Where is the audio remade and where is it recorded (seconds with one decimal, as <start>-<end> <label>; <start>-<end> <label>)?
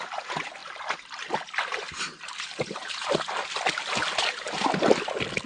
0.0-5.5 recorded